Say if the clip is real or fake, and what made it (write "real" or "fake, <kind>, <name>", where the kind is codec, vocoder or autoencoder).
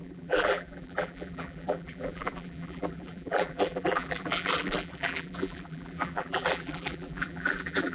fake, vocoder, BigVGAN v2